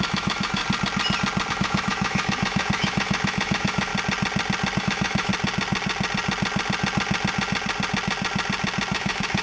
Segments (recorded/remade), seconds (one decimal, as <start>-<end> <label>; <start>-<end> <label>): 0.0-0.6 remade; 0.6-1.5 recorded; 1.5-3.9 remade; 3.9-4.8 recorded; 4.8-5.3 remade; 5.3-8.9 recorded; 8.9-9.4 remade